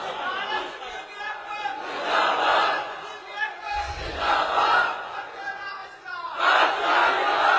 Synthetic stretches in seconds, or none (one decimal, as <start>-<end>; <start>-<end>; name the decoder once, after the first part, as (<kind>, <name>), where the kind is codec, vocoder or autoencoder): 0.0-7.6 (vocoder, Vocos)